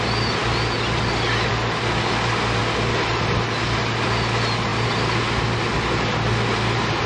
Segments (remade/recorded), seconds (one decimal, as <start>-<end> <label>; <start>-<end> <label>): 0.0-7.1 recorded